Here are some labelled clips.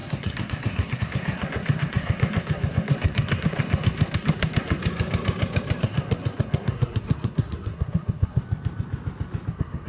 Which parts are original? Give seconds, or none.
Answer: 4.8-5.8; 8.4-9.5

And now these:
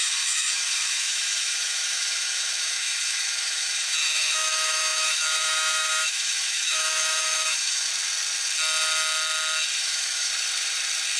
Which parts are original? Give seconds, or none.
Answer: 7.9-9.8; 10.3-11.2

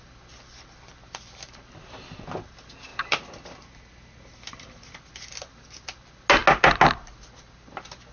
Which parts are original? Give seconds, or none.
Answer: 0.0-8.1

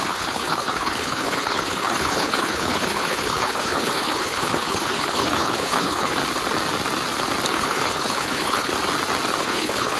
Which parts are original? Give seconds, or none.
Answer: 6.2-7.5; 8.7-9.4

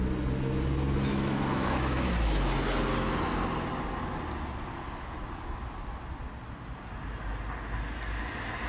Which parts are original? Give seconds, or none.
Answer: 0.0-1.1; 2.1-8.7

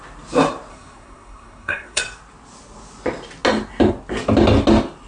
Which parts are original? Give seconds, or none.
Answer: 0.0-0.7; 2.0-5.1

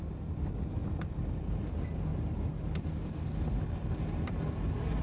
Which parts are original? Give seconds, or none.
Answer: 0.0-5.0

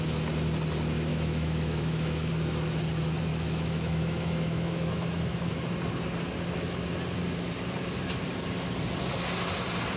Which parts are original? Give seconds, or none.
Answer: 0.0-1.1; 2.3-3.3; 5.5-10.0